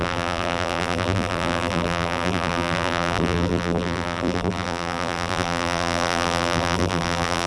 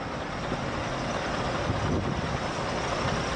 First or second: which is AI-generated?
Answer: first